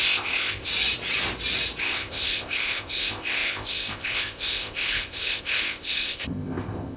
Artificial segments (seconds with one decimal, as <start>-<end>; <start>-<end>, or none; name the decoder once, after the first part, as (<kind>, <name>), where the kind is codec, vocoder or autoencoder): 0.0-0.7 (codec, ZipCodec); 1.8-7.0